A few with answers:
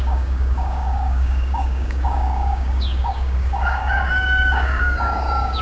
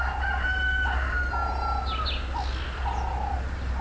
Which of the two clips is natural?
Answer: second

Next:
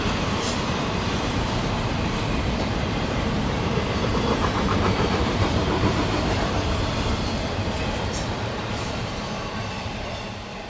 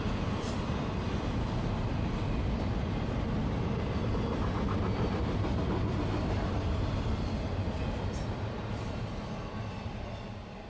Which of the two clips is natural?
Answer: second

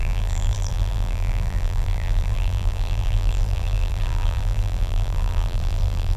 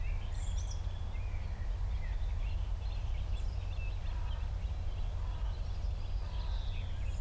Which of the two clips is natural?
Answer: second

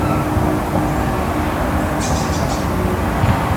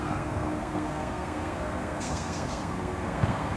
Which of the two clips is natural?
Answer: first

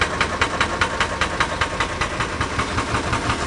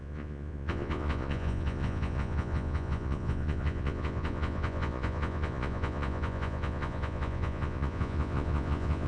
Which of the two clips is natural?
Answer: first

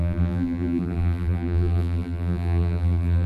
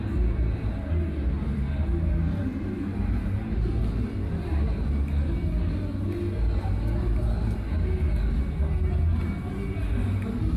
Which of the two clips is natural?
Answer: second